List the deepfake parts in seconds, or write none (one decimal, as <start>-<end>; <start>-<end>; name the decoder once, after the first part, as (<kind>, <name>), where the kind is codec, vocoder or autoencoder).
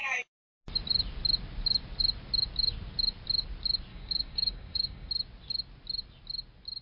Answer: 3.9-5.1 (codec, DAC)